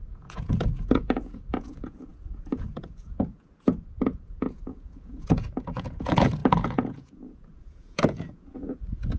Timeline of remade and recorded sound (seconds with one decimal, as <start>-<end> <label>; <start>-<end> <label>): 0.0-9.2 remade